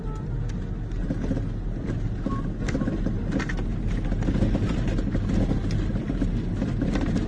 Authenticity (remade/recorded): recorded